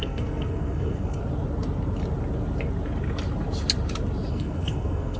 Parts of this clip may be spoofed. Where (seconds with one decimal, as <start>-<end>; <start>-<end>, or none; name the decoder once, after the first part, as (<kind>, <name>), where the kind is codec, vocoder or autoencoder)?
0.0-1.2 (codec, SNAC); 4.3-5.2